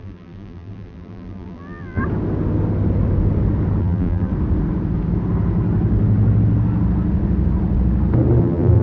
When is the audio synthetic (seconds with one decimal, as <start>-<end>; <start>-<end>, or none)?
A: 0.0-2.0; 3.8-4.3; 8.4-8.8